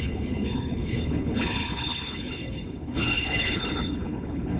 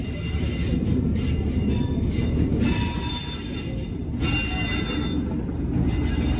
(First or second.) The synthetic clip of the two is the first